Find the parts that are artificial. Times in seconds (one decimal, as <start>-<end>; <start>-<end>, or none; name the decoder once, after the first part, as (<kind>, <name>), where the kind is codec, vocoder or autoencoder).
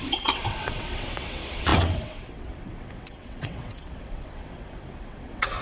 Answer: 0.0-5.6 (vocoder, WaveNeXt)